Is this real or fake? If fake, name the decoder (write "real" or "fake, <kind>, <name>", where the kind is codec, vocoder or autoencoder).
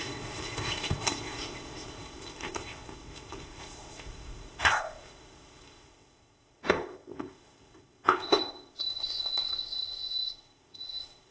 fake, codec, ZipCodec